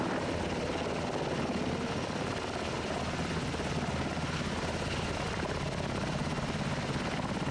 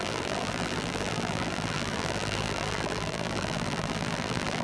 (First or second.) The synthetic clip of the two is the second